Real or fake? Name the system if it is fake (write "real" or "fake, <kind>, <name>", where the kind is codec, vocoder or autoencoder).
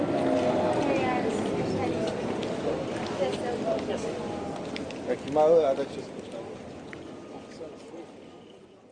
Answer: real